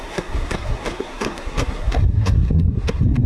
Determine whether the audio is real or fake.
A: fake